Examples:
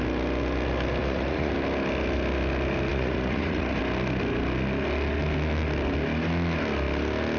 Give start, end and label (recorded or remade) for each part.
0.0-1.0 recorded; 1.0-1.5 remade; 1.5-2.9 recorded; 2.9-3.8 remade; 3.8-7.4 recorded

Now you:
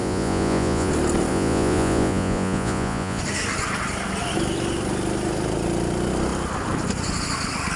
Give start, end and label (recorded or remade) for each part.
0.0-0.9 remade; 0.9-1.3 recorded; 1.3-3.2 remade; 3.2-7.8 recorded

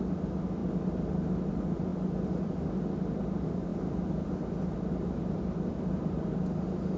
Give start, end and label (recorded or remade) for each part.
0.0-7.0 recorded

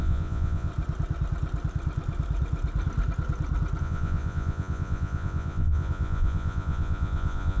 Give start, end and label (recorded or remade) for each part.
0.0-0.7 remade; 0.7-3.8 recorded; 3.8-7.6 remade

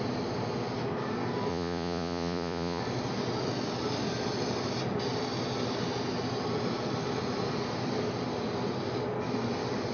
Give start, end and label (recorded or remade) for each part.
0.0-1.5 recorded; 1.5-2.8 remade; 2.8-9.9 recorded

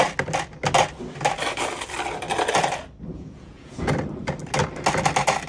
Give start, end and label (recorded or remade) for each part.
0.0-3.1 recorded; 3.1-3.9 remade; 3.9-5.5 recorded

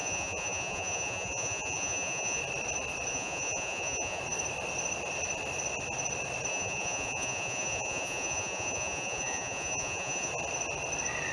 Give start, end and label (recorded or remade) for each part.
0.0-2.4 remade; 2.4-3.1 recorded; 3.1-4.2 remade; 4.2-6.5 recorded; 6.5-10.3 remade; 10.3-11.3 recorded